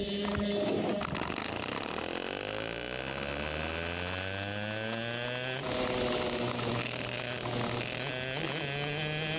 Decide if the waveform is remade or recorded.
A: recorded